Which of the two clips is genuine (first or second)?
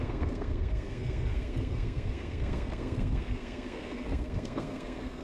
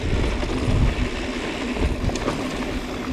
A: second